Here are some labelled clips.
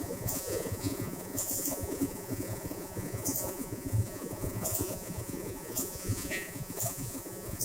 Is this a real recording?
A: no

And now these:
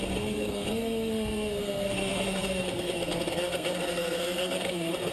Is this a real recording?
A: no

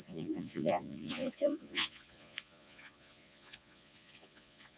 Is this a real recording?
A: no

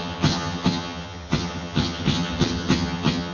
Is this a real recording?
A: no